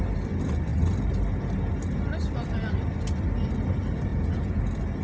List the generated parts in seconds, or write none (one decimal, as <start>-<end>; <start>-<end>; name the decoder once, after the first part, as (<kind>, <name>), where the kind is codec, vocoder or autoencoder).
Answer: 4.1-4.6 (vocoder, Vocos)